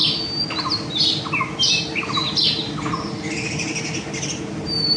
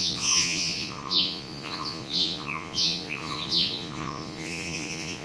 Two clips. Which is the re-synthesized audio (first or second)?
second